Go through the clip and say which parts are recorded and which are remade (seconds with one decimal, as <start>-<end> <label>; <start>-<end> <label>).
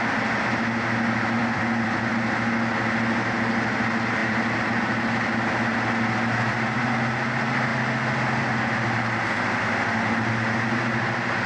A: 0.0-1.4 recorded; 1.4-2.1 remade; 2.1-4.2 recorded; 4.2-4.8 remade; 4.8-11.5 recorded